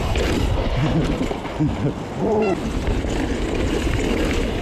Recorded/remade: recorded